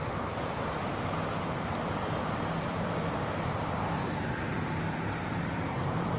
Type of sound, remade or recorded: remade